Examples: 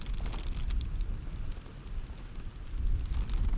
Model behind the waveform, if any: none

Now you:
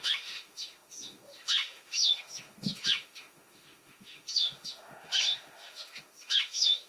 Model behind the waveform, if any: autoencoder, DAC-VAE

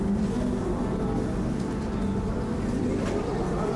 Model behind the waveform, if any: none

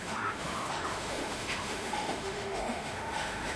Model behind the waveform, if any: autoencoder, DAC-VAE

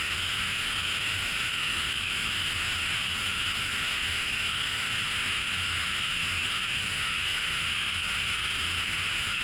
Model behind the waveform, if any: autoencoder, DAC-VAE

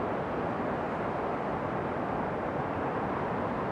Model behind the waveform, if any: none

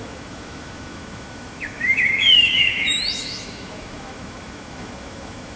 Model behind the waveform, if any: autoencoder, DAC-VAE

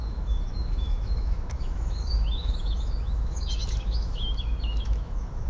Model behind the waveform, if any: autoencoder, DAC-VAE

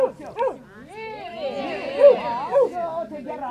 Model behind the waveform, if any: none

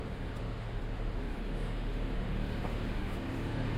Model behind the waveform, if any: autoencoder, DAC-VAE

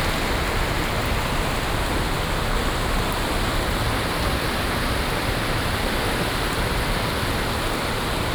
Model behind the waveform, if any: none